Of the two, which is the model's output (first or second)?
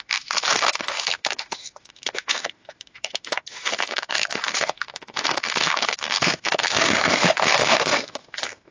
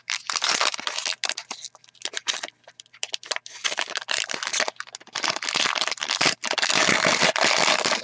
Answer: first